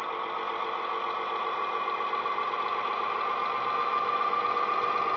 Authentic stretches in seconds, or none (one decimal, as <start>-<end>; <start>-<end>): 0.0-3.8; 4.4-5.2